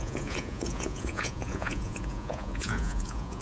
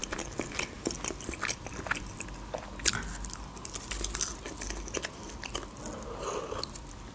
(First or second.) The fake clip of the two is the first